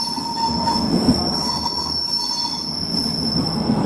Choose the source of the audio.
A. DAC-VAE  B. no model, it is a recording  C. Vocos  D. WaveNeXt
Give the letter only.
B